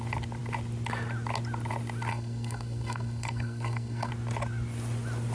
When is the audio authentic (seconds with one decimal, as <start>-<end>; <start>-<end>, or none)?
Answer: 0.0-2.1; 4.1-5.3